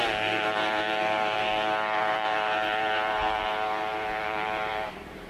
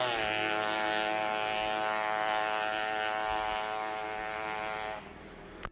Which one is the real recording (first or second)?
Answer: second